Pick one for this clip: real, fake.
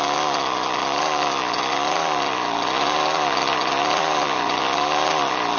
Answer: fake